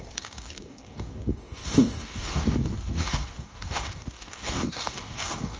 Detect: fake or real fake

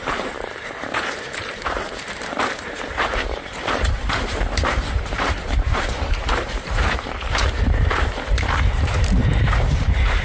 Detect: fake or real fake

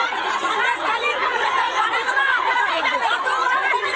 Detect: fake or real fake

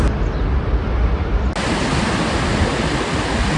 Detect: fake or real real